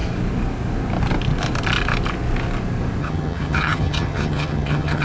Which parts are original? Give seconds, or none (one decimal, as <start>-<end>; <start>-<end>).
0.0-3.0